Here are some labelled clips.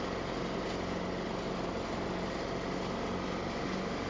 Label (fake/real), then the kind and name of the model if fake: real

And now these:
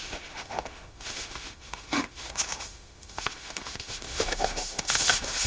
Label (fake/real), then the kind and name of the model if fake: fake, autoencoder, DAC-VAE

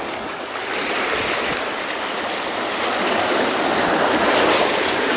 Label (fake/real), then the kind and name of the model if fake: real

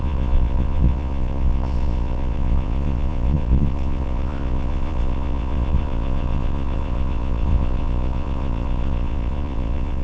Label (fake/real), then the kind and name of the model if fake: fake, vocoder, Vocos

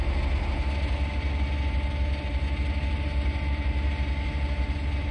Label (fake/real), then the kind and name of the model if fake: real